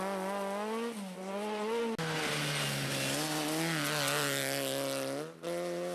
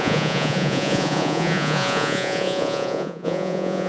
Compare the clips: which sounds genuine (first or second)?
first